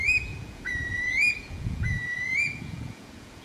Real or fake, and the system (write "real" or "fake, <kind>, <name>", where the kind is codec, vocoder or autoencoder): fake, vocoder, Vocos